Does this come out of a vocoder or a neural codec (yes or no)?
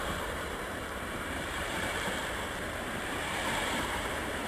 yes